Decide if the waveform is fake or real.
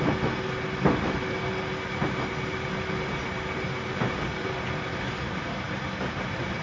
real